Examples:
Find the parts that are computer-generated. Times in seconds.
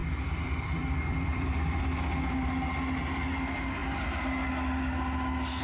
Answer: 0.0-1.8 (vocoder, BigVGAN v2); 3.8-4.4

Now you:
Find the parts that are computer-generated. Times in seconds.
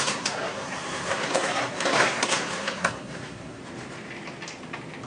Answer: 0.0-3.6 (codec, SNAC)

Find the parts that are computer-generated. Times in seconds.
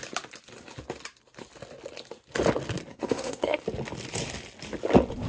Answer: 2.9-3.6 (codec, SNAC)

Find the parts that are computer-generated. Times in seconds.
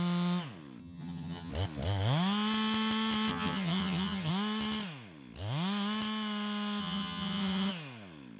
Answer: 0.8-1.5 (vocoder, HiFi-GAN); 3.3-4.3; 6.8-7.7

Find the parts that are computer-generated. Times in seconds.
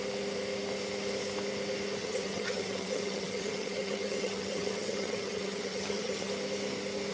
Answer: 2.0-6.3 (vocoder, HiFi-GAN)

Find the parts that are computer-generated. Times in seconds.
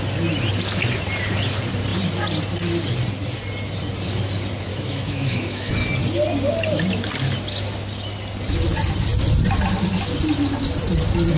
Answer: 4.7-5.7 (autoencoder, DAC-VAE)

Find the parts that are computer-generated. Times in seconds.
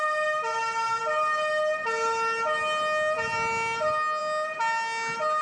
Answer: none